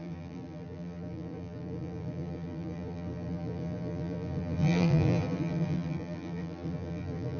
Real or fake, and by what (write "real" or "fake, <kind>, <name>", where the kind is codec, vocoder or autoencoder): fake, vocoder, BigVGAN v2